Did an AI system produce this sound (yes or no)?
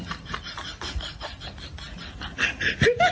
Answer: no